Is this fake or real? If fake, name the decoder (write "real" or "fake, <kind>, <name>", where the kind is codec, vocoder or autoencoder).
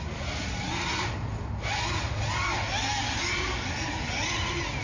real